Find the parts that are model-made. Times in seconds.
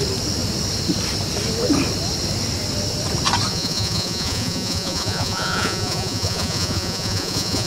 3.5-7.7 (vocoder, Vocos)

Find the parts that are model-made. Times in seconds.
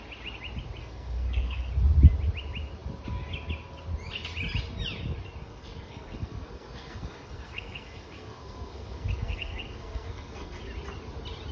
0.8-1.7 (codec, SNAC); 5.4-10.6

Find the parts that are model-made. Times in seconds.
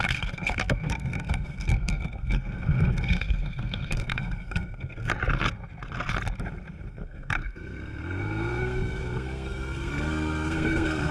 0.0-5.1 (codec, SNAC); 6.9-11.1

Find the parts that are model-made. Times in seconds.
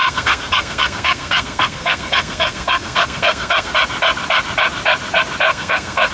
0.0-3.7 (codec, SNAC); 5.5-6.1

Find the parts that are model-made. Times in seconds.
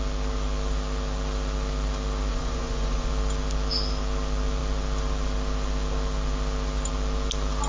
2.3-3.1 (vocoder, Vocos)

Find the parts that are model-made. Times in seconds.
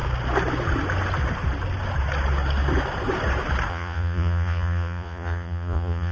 3.7-6.1 (vocoder, Vocos)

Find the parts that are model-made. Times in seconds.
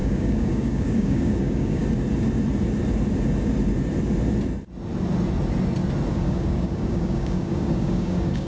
0.0-1.8 (codec, DAC); 6.1-8.5